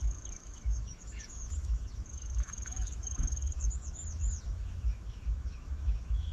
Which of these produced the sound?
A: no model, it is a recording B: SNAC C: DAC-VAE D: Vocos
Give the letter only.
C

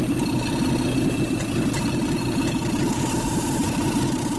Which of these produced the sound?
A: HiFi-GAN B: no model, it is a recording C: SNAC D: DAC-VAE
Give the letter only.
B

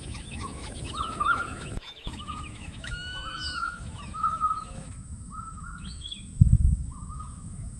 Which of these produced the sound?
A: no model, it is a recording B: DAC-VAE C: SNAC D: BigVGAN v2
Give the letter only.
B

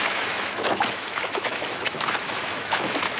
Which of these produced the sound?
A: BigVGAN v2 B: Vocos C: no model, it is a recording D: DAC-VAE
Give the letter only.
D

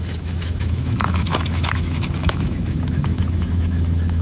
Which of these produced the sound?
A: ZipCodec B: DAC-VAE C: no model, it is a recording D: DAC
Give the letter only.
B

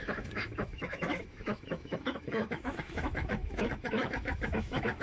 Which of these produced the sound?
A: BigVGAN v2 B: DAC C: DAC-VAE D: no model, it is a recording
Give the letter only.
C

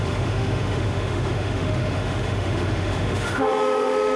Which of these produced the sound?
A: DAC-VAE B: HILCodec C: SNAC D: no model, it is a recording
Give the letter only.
A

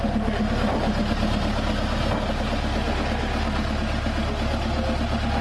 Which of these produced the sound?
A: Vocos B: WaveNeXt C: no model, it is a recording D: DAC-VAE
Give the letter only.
C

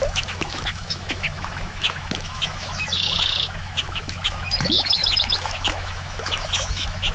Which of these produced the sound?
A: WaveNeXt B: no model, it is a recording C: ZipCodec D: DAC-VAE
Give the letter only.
D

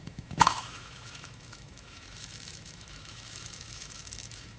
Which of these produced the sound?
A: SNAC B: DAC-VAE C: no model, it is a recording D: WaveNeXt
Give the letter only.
B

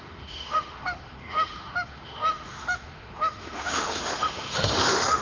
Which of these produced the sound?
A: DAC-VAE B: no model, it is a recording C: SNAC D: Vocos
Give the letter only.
A